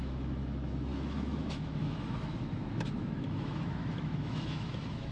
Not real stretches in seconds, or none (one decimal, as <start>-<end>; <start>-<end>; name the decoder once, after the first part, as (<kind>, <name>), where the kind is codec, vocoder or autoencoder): 0.0-5.1 (autoencoder, DAC-VAE)